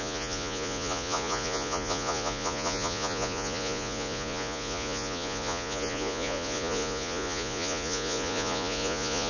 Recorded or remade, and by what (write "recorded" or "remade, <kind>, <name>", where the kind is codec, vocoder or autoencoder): remade, vocoder, Vocos